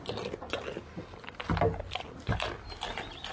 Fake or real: real